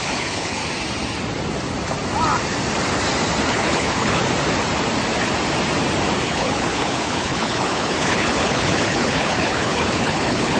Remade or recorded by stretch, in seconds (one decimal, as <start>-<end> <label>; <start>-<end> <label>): 0.0-0.6 remade; 0.6-3.5 recorded; 3.5-4.2 remade; 4.2-6.2 recorded; 6.2-10.6 remade